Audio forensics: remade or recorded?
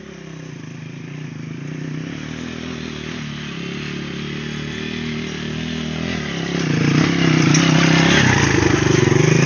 recorded